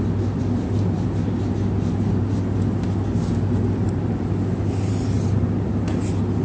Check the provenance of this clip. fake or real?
real